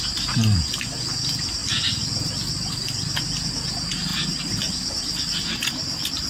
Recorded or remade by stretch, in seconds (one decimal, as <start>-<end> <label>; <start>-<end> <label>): 0.0-1.6 recorded; 1.6-2.7 remade; 2.7-4.1 recorded; 4.1-5.8 remade; 5.8-6.3 recorded